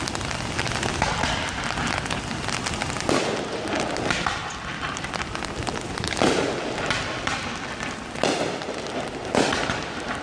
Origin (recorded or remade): recorded